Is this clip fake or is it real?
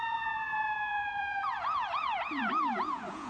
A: fake